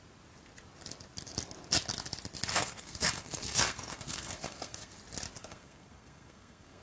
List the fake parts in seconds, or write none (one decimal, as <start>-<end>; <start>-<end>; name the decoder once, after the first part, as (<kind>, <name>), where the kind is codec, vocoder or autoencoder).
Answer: 2.5-5.0 (codec, SNAC); 5.4-6.8